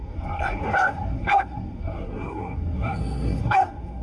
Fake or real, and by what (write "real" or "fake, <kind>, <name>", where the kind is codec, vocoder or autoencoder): fake, codec, SNAC